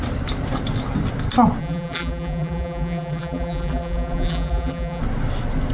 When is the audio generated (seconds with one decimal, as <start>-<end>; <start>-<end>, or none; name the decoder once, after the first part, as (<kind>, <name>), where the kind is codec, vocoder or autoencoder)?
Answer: 1.6-5.0 (vocoder, BigVGAN v2)